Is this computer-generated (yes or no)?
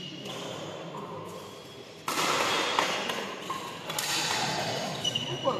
no